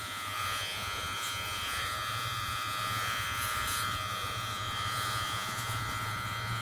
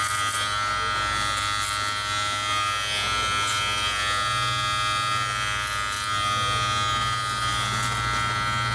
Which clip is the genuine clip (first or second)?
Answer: second